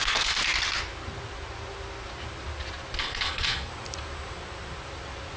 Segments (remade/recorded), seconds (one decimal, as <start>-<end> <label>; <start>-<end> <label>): 0.0-0.4 remade; 0.4-3.0 recorded; 3.0-3.7 remade; 3.7-5.4 recorded